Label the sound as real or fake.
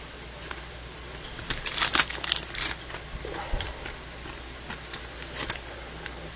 real